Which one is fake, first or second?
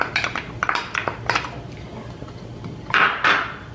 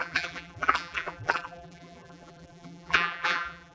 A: second